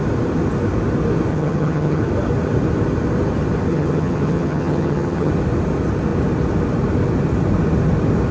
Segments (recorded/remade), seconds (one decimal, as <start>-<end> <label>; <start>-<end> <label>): 0.0-1.3 recorded; 1.3-2.0 remade; 2.0-3.7 recorded; 3.7-5.3 remade; 5.3-8.3 recorded